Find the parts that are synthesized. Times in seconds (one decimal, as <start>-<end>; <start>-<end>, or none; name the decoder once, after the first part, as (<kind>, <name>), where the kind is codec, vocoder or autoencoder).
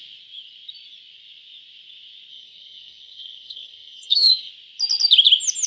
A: 2.3-4.5 (codec, SNAC)